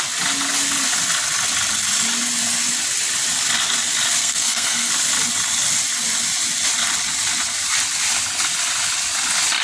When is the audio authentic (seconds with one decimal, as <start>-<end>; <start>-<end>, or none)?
0.0-4.2; 4.9-9.6